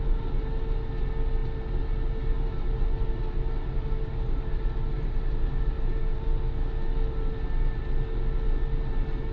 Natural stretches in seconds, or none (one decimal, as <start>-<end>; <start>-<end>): 0.0-9.3